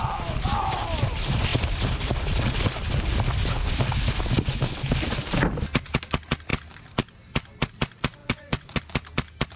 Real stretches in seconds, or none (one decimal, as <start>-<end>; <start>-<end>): 0.0-8.2; 8.8-9.6